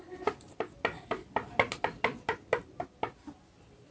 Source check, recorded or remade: recorded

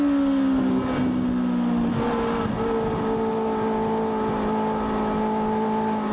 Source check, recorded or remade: recorded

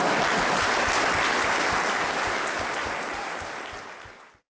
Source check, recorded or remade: recorded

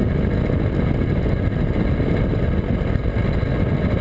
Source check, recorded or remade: recorded